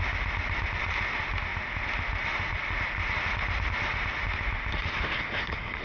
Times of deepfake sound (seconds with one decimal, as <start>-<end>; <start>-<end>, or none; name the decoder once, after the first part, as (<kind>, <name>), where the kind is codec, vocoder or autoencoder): none